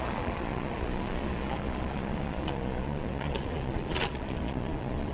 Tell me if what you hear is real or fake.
fake